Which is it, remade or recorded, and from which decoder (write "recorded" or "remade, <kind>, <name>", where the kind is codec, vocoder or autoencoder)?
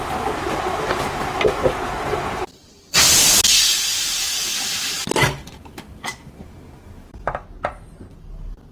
recorded